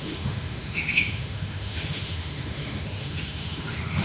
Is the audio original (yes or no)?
no